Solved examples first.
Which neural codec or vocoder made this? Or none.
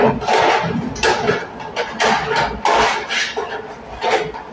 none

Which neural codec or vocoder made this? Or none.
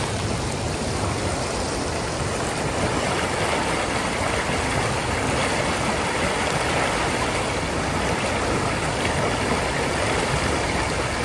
none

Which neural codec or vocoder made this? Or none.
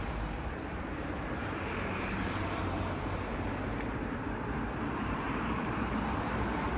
vocoder, BigVGAN v2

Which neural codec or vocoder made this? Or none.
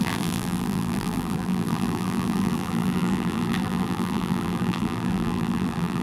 vocoder, BigVGAN v2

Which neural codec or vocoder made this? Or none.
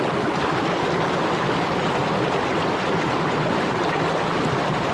none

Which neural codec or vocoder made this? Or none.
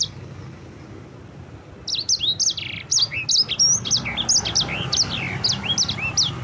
none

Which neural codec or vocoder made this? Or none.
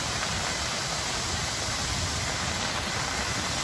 none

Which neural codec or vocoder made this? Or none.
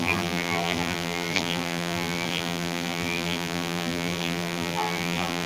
vocoder, BigVGAN v2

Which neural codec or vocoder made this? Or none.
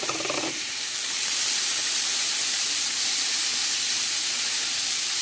vocoder, BigVGAN v2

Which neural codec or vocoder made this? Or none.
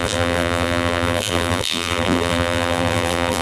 vocoder, BigVGAN v2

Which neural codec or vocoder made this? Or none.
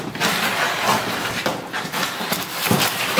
vocoder, BigVGAN v2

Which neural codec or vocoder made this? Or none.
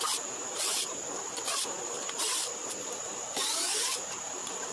vocoder, BigVGAN v2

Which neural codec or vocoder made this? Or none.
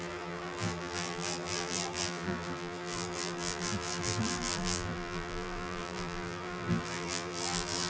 vocoder, BigVGAN v2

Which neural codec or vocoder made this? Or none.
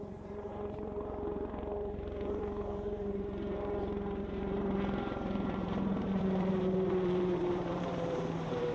vocoder, BigVGAN v2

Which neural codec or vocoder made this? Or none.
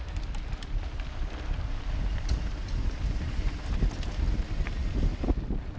none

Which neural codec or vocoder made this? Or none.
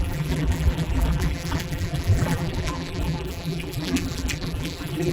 vocoder, BigVGAN v2